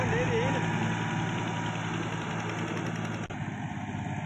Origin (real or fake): real